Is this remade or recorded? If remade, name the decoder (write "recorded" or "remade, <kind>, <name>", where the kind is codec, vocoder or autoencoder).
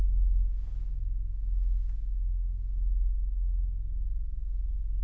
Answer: recorded